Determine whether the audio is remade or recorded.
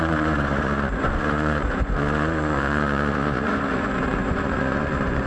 remade